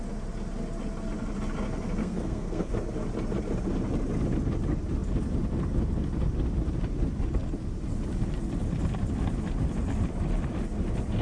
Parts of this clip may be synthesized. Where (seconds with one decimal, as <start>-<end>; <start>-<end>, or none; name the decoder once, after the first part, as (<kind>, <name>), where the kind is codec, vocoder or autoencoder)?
2.0-2.7 (codec, SNAC)